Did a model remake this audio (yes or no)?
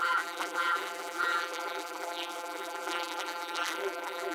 yes